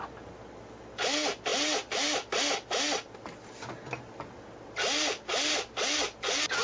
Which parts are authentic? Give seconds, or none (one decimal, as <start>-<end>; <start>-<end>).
0.0-6.6

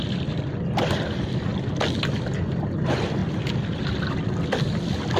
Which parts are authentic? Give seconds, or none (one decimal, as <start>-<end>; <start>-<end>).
0.0-5.2